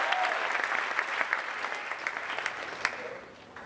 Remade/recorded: recorded